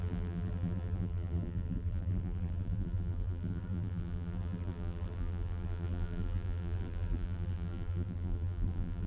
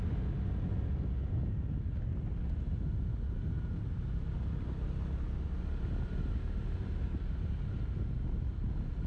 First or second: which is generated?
first